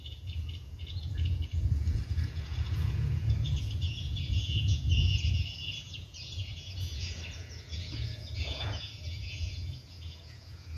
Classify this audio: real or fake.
fake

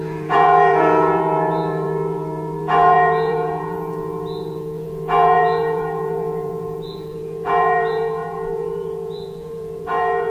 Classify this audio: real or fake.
fake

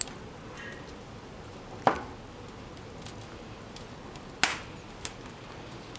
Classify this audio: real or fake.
real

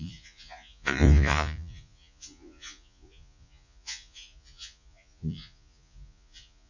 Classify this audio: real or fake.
fake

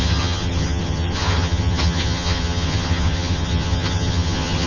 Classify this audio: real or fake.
fake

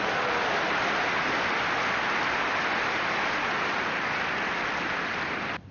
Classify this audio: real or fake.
real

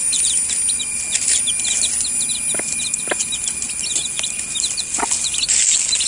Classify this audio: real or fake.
real